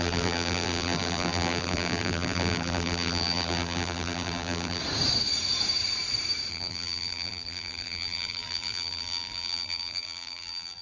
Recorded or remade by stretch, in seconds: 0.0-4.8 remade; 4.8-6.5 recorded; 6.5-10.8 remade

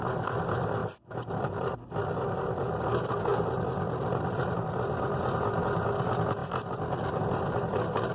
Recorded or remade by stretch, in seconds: 0.0-0.8 recorded; 0.8-1.9 remade; 1.9-3.3 recorded; 3.3-5.2 remade; 5.2-8.1 recorded

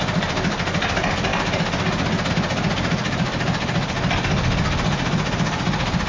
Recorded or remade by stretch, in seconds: 0.0-6.1 recorded

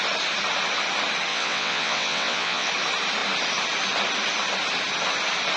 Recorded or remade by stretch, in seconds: 0.0-1.3 recorded; 1.3-2.7 remade; 2.7-5.6 recorded

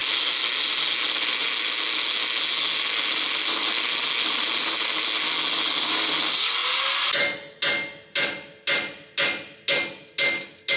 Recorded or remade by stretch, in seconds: 0.0-10.8 recorded

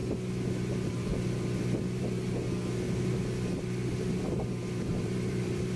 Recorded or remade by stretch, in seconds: 0.0-0.7 recorded; 0.7-1.1 remade; 1.1-4.6 recorded; 4.6-5.8 remade

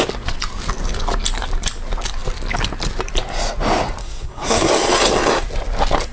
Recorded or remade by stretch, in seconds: 0.0-4.0 recorded; 4.0-4.7 remade; 4.7-6.1 recorded